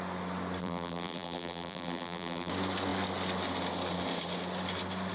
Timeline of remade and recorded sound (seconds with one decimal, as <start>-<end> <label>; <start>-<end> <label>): 0.0-0.6 recorded; 0.6-2.5 remade; 2.5-5.1 recorded